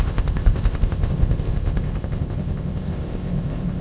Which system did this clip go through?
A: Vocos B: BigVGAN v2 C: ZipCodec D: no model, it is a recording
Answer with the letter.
C